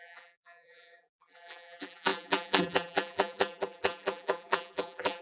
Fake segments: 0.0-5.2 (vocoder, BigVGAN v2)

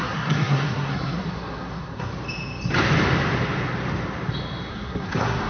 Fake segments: 0.0-2.1 (codec, SNAC); 4.7-5.5

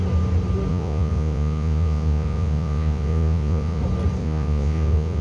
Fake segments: 0.7-3.8 (vocoder, Vocos); 4.2-5.2

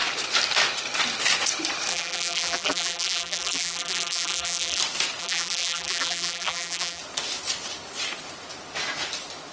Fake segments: 1.9-4.8 (vocoder, BigVGAN v2); 5.2-7.0